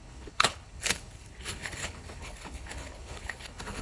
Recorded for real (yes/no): no